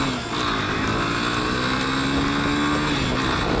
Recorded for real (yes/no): yes